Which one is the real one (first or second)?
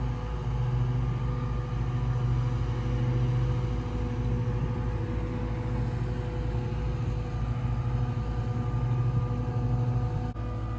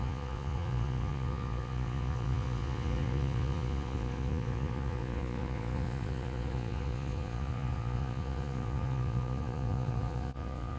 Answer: first